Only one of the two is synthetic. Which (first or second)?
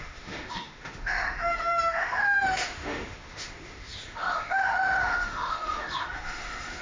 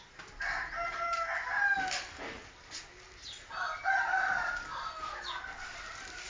first